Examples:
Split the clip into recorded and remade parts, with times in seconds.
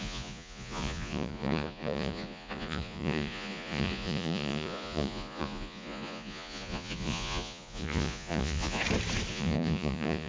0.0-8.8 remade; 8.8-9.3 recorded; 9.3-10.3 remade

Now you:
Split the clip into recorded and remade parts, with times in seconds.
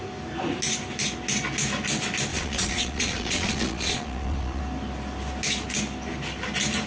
0.0-2.3 recorded; 2.3-4.6 remade; 4.6-6.9 recorded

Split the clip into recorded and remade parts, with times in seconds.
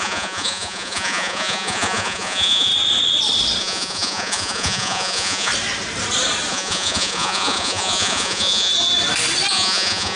0.0-2.7 remade; 2.7-3.6 recorded; 3.6-5.5 remade; 5.5-6.5 recorded; 6.5-8.7 remade; 8.7-9.5 recorded; 9.5-10.2 remade